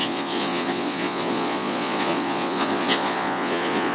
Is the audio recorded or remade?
remade